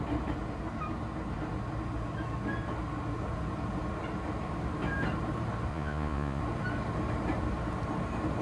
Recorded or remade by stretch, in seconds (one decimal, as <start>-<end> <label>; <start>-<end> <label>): 0.0-5.7 recorded; 5.7-6.4 remade; 6.4-8.4 recorded